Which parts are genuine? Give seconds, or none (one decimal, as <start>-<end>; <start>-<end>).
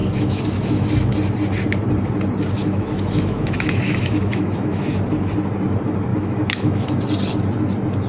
0.9-2.6; 4.8-6.1; 7.0-8.1